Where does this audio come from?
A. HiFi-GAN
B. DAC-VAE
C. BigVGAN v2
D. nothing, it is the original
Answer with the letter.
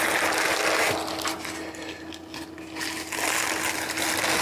D